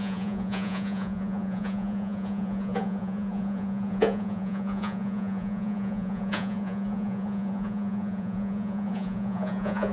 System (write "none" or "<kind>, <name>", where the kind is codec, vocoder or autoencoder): vocoder, Vocos